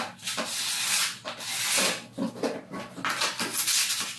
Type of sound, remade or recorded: recorded